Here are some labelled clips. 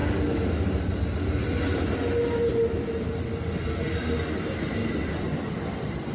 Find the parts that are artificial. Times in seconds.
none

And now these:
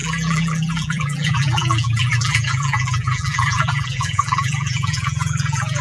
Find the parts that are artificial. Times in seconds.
0.0-5.8

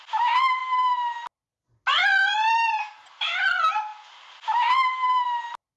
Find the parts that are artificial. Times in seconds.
none

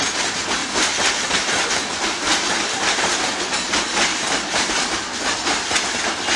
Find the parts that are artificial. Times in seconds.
0.6-3.2; 4.1-4.7

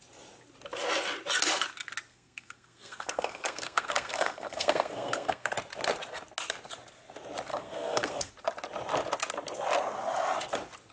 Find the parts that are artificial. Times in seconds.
2.1-5.5; 7.5-8.3